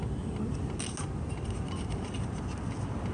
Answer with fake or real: real